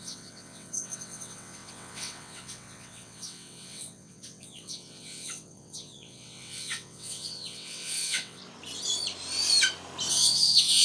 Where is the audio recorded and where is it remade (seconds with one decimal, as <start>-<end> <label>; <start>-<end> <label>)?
0.0-8.4 remade; 8.4-10.1 recorded; 10.1-10.8 remade